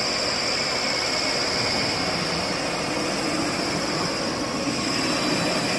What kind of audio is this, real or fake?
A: real